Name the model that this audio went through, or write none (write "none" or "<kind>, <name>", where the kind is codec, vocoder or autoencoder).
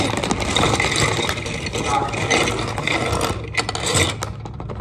none